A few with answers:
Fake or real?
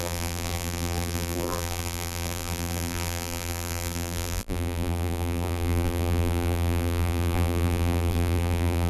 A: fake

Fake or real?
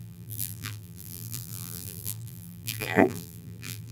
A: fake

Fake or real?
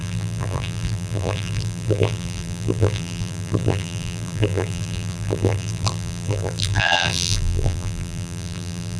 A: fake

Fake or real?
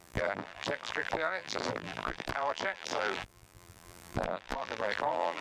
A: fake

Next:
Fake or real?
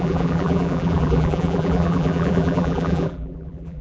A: fake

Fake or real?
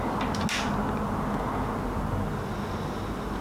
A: real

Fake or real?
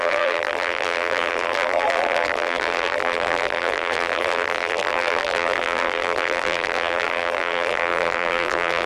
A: fake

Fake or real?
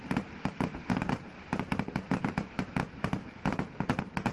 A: fake